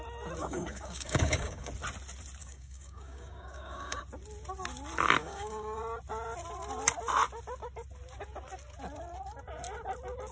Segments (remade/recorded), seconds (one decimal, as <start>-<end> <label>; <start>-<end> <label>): 0.0-0.4 recorded; 0.4-1.7 remade; 1.7-2.4 recorded; 2.4-4.0 remade; 4.0-5.2 recorded; 5.2-5.8 remade; 5.8-10.3 recorded